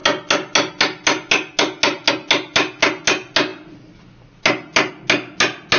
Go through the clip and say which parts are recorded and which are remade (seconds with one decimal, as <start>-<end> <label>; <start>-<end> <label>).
0.0-5.8 recorded